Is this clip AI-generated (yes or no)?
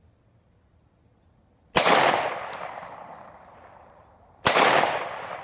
yes